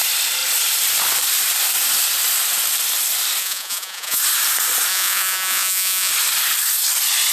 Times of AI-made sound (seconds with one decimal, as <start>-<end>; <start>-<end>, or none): 3.4-4.2; 4.9-6.1